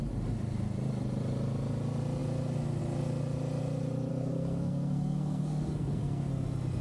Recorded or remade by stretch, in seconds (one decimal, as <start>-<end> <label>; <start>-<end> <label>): 0.0-4.1 recorded; 4.1-6.3 remade; 6.3-6.8 recorded